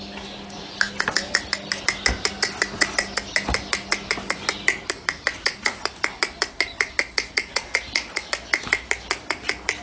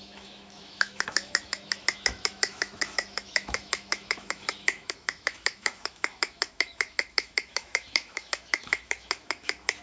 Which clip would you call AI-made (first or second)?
second